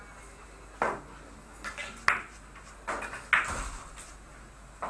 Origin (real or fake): real